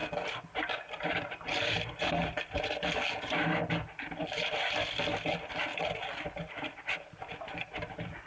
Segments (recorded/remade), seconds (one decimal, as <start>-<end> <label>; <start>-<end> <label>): 0.0-0.9 recorded; 0.9-8.3 remade